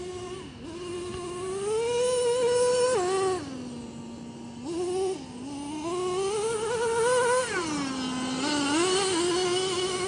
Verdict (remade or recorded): recorded